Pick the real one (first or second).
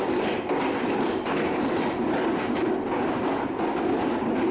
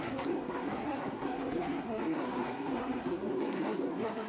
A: first